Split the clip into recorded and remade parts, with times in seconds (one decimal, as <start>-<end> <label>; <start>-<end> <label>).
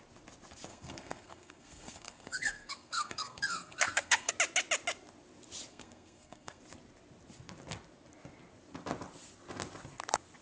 0.0-0.7 recorded; 0.7-4.3 remade; 4.3-5.7 recorded; 5.7-6.6 remade; 6.6-10.4 recorded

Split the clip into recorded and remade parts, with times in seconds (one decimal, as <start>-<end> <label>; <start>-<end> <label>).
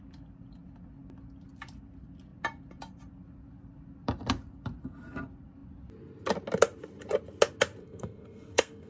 0.0-7.8 recorded; 7.8-8.9 remade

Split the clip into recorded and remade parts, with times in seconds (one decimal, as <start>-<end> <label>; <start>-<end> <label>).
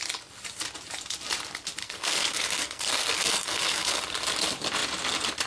0.0-1.8 recorded; 1.8-4.0 remade; 4.0-5.5 recorded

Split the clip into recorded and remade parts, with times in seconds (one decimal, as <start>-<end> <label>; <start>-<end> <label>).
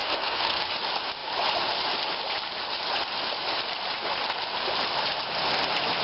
0.0-0.7 remade; 0.7-6.0 recorded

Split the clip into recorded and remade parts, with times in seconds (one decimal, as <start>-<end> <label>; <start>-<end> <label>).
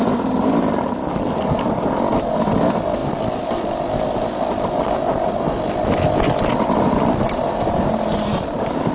0.0-8.9 recorded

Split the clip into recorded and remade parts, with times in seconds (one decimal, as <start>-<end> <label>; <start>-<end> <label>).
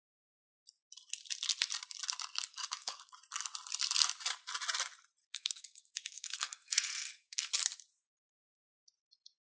0.0-2.5 recorded; 2.5-3.1 remade; 3.1-5.2 recorded; 5.2-7.5 remade; 7.5-9.4 recorded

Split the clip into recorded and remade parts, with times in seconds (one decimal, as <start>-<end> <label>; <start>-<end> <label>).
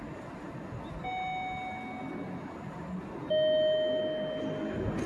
0.0-5.1 recorded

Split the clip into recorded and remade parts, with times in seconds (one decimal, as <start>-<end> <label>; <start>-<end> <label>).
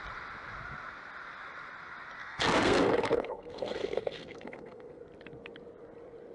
0.0-2.2 recorded; 2.2-5.0 remade; 5.0-6.3 recorded